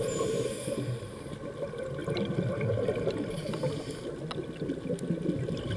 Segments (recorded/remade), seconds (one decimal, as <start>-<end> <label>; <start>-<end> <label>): 0.0-5.8 recorded